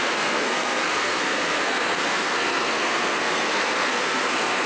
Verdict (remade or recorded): remade